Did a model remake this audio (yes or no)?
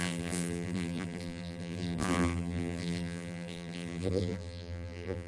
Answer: yes